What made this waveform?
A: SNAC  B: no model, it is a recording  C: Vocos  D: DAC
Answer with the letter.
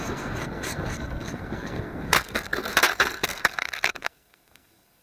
A